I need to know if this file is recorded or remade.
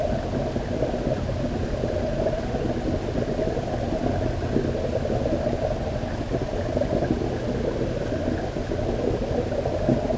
recorded